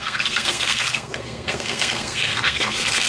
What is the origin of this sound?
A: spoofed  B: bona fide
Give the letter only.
A